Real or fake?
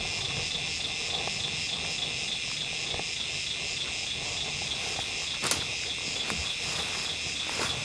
real